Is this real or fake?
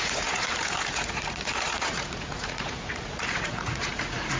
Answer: fake